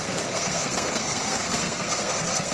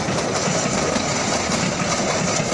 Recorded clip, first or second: second